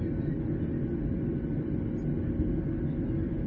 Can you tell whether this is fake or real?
real